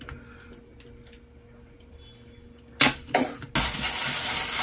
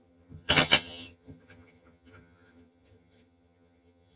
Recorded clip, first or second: first